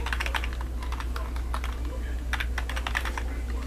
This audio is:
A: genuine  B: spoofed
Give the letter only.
A